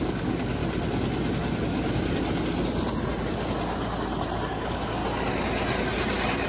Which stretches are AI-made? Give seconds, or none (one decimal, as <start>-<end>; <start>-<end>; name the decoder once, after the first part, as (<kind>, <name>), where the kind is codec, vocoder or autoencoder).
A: 0.0-0.6 (codec, DAC); 4.5-5.0